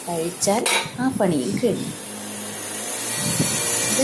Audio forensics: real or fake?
real